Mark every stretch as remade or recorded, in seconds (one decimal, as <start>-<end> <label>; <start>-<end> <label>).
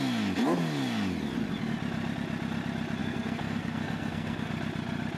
0.0-3.0 recorded; 3.0-4.5 remade; 4.5-5.2 recorded